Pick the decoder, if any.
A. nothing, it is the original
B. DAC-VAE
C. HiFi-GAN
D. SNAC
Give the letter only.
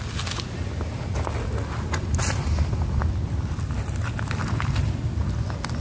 A